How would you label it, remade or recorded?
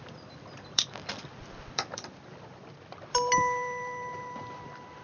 remade